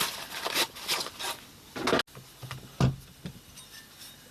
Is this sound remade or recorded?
recorded